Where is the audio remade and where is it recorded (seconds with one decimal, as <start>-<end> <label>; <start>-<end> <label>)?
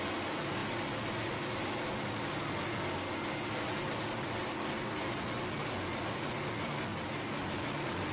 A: 0.0-8.1 recorded